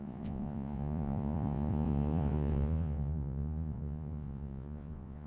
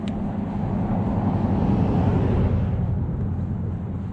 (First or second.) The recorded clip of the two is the second